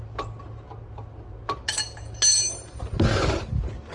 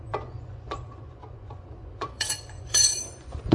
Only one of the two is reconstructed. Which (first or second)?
second